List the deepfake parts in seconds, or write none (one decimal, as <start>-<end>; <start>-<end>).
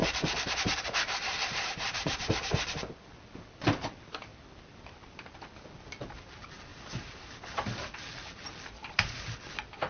0.0-2.7; 6.7-7.3; 8.8-9.4